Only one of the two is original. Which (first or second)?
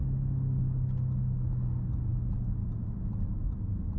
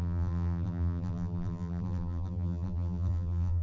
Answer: first